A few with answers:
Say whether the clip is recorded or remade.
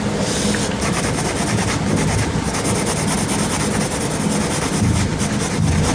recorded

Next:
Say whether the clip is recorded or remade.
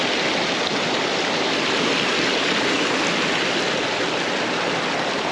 recorded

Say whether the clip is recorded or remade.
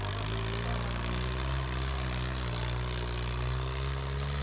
recorded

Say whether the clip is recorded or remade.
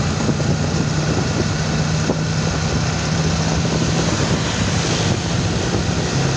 recorded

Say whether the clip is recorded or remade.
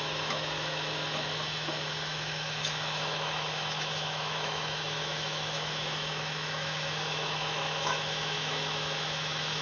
remade